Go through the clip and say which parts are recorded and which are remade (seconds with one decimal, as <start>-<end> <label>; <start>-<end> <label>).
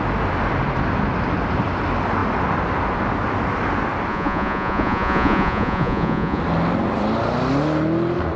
0.0-4.1 recorded; 4.1-6.4 remade; 6.4-8.4 recorded